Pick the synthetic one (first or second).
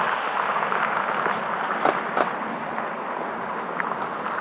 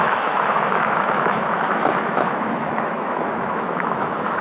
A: second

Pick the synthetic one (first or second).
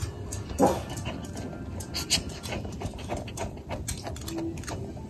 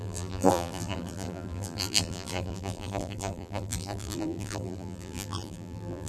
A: second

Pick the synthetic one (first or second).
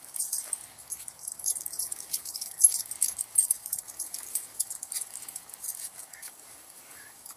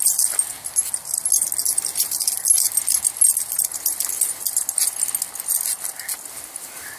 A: first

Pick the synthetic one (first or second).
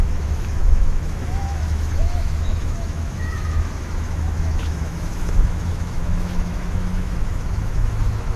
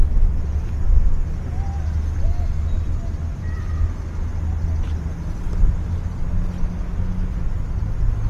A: first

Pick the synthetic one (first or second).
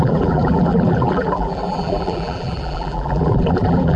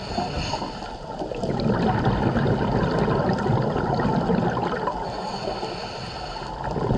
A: first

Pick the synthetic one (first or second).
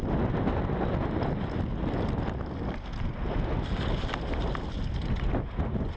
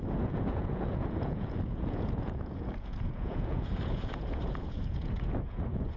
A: second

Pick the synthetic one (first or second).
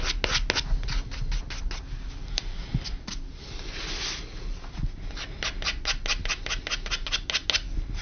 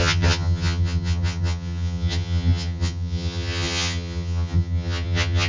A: second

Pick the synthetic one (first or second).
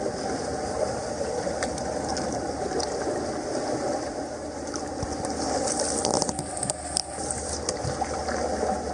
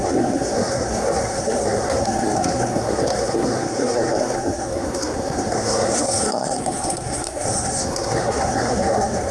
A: second